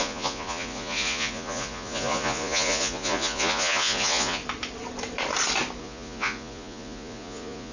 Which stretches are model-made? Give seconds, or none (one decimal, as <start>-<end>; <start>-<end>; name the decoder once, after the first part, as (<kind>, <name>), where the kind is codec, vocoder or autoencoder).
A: 0.0-4.4 (vocoder, Vocos); 5.8-7.7